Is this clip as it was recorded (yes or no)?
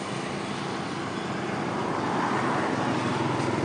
yes